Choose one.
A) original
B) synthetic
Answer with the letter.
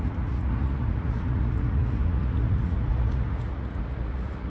B